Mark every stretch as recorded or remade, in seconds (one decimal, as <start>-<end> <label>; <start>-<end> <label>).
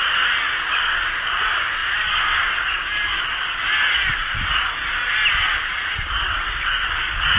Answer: 0.0-7.4 recorded